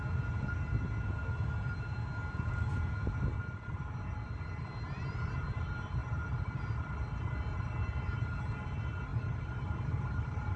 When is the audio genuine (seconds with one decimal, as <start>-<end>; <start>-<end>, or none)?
0.0-9.1